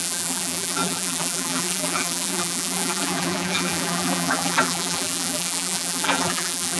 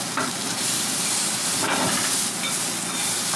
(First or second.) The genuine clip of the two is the second